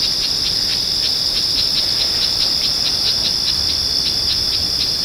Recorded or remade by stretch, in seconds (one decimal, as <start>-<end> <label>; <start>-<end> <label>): 0.0-0.7 recorded; 0.7-3.7 remade; 3.7-5.0 recorded